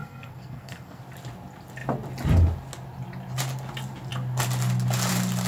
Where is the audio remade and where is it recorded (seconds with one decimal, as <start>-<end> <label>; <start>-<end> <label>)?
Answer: 0.0-1.0 remade; 1.0-5.5 recorded